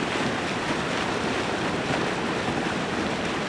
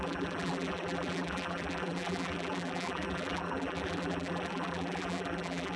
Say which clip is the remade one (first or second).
second